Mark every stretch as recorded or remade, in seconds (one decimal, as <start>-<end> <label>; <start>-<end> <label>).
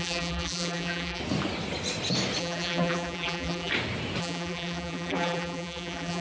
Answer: 0.0-1.2 remade; 1.2-2.4 recorded; 2.4-3.7 remade; 3.7-4.2 recorded; 4.2-6.2 remade